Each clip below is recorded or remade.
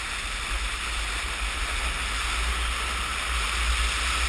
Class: recorded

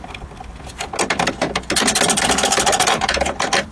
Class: recorded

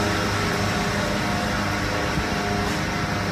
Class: recorded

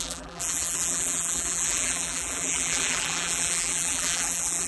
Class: remade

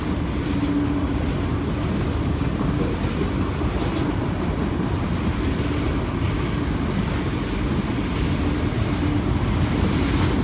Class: recorded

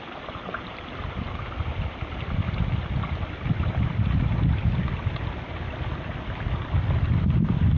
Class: recorded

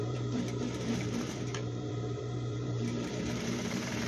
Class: remade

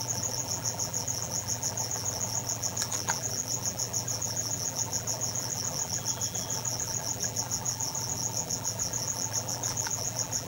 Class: remade